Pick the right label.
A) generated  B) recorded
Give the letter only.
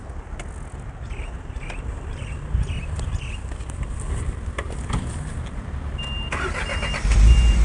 B